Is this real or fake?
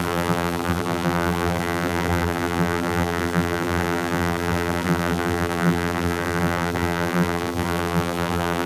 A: fake